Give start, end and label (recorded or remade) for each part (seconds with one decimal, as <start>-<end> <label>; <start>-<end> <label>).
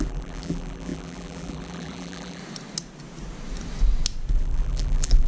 0.0-2.4 remade; 2.4-4.3 recorded; 4.3-5.3 remade